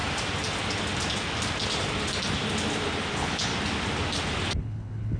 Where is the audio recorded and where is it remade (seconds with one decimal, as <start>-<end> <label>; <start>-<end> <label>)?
0.0-3.1 recorded; 3.1-3.5 remade; 3.5-4.6 recorded; 4.6-5.2 remade